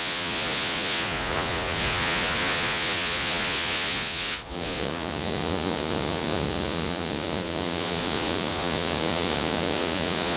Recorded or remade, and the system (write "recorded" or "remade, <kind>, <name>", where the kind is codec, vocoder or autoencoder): remade, vocoder, Vocos